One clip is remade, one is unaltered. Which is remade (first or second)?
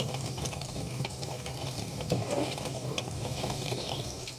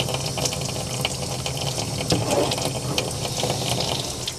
first